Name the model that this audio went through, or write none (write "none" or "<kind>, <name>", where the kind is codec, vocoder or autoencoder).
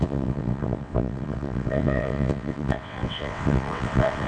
vocoder, WaveNeXt